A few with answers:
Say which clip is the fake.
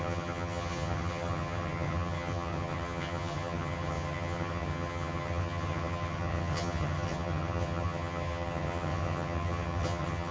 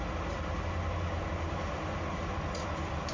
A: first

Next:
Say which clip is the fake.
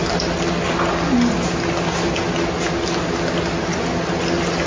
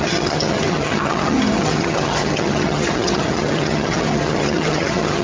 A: second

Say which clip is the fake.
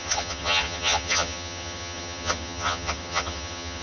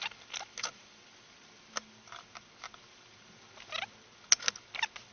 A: first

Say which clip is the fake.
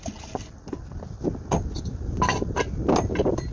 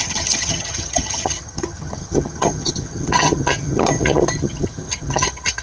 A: second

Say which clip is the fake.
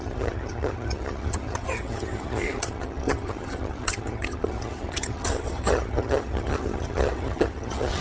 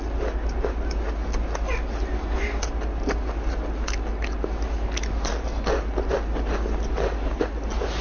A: first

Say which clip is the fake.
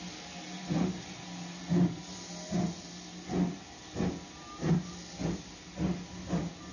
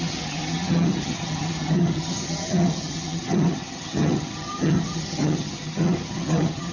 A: second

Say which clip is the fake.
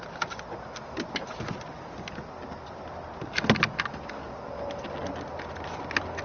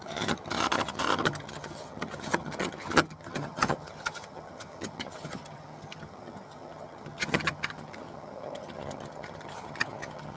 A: second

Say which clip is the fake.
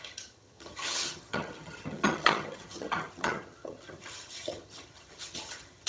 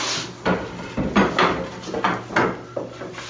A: first